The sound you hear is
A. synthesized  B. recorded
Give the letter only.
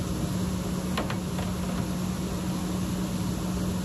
B